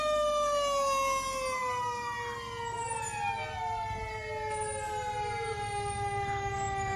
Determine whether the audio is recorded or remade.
recorded